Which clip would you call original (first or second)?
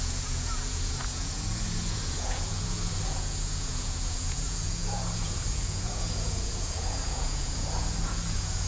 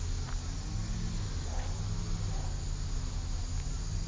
second